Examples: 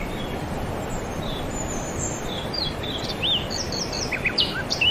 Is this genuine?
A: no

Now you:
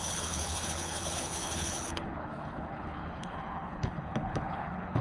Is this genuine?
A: no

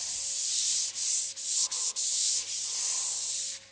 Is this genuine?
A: yes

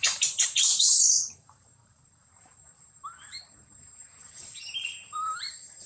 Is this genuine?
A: no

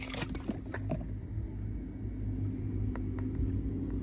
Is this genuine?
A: yes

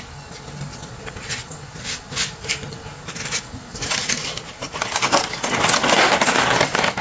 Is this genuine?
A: yes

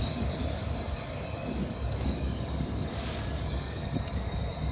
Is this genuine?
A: no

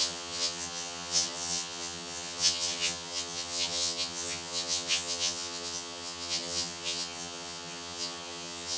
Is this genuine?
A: no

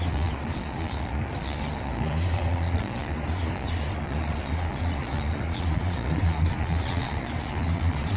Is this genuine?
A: no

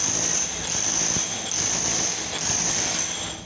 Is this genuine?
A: yes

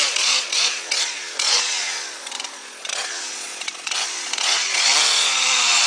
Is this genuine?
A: no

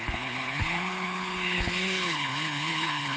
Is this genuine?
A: no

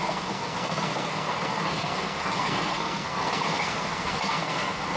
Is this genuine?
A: no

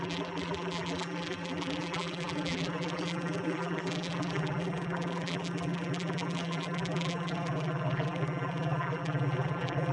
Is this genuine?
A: no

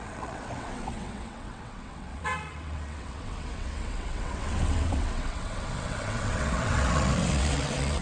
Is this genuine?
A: no